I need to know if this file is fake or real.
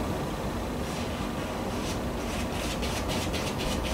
real